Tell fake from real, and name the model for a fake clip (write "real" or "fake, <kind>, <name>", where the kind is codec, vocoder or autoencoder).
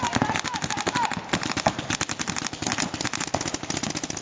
real